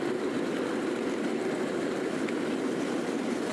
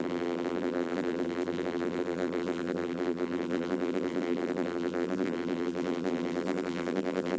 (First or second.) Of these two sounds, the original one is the first